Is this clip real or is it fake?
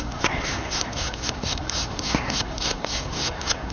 fake